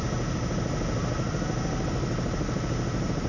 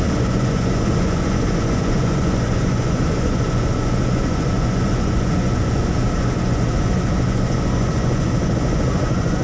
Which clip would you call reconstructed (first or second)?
second